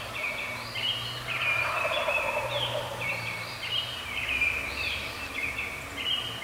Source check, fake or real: fake